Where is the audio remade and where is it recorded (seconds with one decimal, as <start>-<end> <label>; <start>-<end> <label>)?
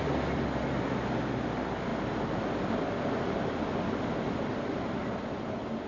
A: 0.0-5.9 recorded